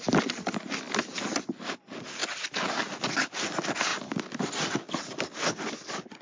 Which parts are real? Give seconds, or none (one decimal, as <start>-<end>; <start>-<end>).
0.0-6.2